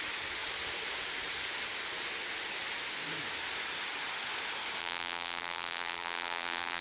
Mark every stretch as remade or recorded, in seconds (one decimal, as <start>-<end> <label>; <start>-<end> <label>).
0.0-4.8 recorded; 4.8-6.8 remade